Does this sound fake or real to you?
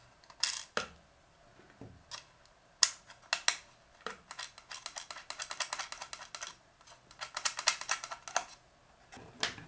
real